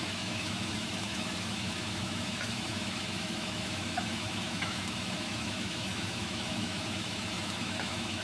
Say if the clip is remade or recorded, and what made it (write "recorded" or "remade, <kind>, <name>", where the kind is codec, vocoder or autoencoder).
remade, autoencoder, DAC-VAE